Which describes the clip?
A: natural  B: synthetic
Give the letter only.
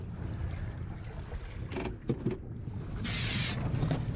A